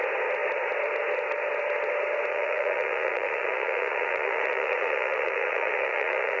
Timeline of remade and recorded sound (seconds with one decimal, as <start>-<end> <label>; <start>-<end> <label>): 0.0-2.3 recorded; 2.3-6.4 remade